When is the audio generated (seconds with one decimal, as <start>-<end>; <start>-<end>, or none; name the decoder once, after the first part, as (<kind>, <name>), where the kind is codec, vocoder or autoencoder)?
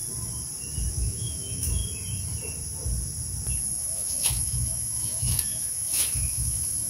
0.9-1.8 (autoencoder, DAC-VAE); 3.8-6.9